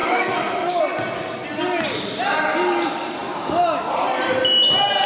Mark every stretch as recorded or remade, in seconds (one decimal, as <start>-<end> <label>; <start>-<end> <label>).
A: 0.0-0.8 remade; 0.8-5.1 recorded